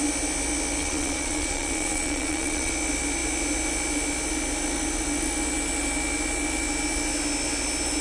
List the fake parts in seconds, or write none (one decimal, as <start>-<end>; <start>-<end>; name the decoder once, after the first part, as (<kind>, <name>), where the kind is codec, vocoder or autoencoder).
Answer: 0.8-2.7 (vocoder, Vocos)